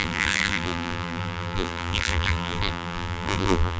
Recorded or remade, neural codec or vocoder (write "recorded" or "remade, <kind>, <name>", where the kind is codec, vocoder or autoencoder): remade, vocoder, BigVGAN v2